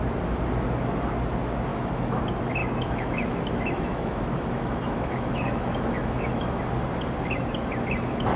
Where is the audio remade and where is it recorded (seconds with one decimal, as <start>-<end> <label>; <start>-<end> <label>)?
0.0-1.7 recorded; 1.7-2.2 remade; 2.2-2.6 recorded; 2.6-6.6 remade; 6.6-8.4 recorded